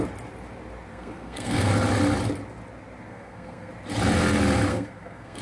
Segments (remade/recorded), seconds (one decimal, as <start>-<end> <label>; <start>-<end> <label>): 0.0-0.9 recorded; 0.9-1.7 remade; 1.7-3.1 recorded; 3.1-3.7 remade; 3.7-4.7 recorded; 4.7-5.4 remade